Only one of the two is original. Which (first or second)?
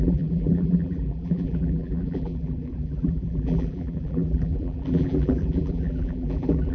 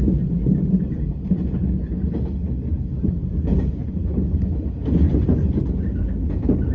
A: second